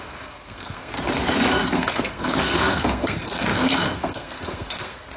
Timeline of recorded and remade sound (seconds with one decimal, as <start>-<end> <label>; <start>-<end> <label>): 0.0-0.9 remade; 0.9-1.7 recorded; 1.7-5.2 remade